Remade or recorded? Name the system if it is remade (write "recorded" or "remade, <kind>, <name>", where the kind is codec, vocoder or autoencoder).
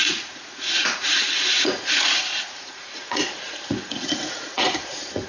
remade, vocoder, Vocos